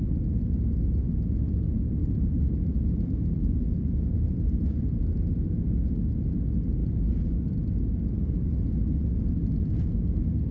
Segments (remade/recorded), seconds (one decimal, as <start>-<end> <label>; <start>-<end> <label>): 0.0-2.0 recorded; 2.0-5.7 remade; 5.7-10.5 recorded